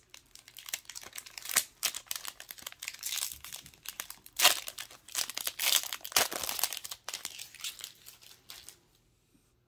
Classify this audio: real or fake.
real